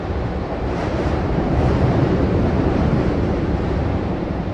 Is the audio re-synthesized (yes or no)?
yes